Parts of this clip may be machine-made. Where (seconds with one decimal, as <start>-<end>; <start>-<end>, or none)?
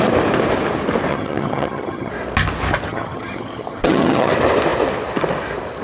1.1-2.1; 2.9-4.3